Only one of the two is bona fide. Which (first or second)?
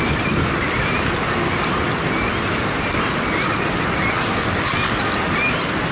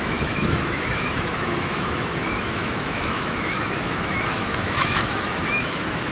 first